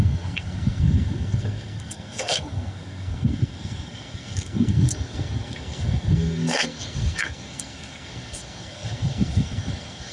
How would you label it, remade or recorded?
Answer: remade